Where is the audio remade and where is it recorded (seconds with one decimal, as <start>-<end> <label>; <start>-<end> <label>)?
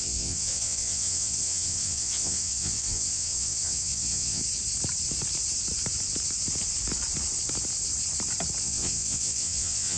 0.0-4.4 remade; 4.4-8.6 recorded; 8.6-10.0 remade